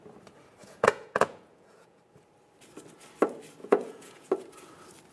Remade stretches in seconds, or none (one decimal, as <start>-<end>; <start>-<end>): 0.6-2.0; 3.6-4.3